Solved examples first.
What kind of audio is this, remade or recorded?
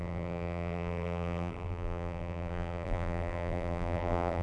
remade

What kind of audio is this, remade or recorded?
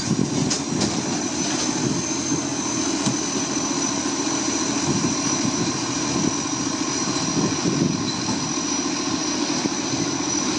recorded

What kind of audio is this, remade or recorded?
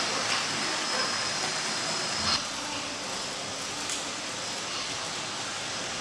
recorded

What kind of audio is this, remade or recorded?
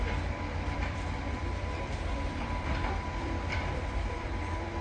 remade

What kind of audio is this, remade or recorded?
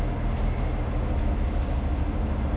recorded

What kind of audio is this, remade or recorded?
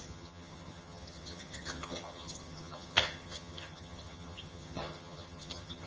remade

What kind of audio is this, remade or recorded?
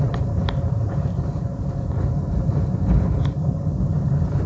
remade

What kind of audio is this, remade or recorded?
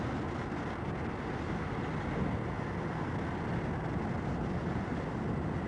recorded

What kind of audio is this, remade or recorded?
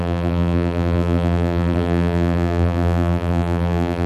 remade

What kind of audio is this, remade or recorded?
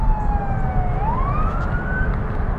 recorded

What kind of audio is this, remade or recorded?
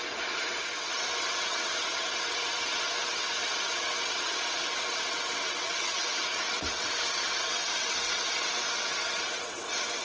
remade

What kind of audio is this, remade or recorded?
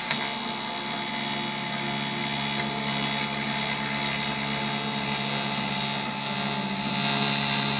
recorded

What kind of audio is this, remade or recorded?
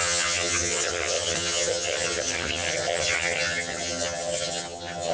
remade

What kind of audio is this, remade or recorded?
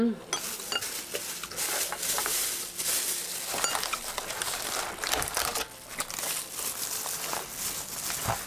recorded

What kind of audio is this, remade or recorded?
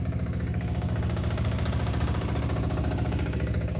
remade